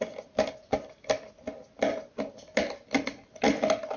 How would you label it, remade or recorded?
recorded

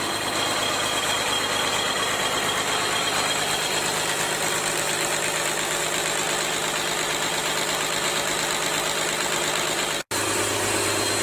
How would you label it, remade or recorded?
recorded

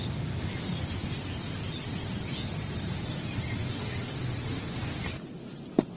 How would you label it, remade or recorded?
recorded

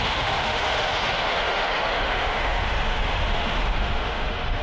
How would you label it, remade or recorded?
remade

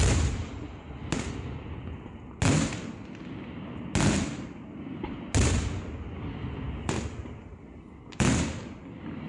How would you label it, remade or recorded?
recorded